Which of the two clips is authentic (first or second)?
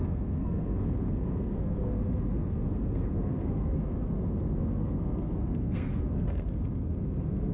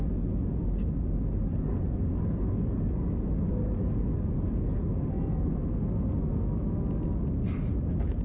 second